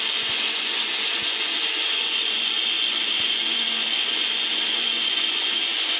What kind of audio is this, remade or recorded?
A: remade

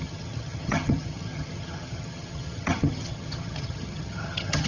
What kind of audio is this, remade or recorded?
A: remade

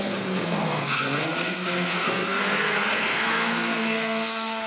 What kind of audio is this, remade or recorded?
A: remade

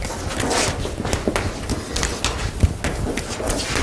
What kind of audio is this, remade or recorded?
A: recorded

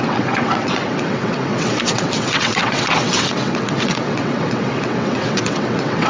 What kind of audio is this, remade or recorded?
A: remade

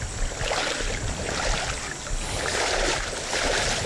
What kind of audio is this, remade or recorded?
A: recorded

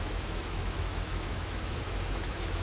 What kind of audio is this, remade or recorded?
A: remade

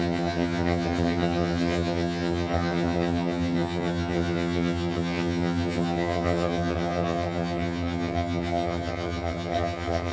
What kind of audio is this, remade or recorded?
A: remade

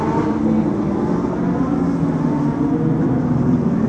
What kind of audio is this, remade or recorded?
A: recorded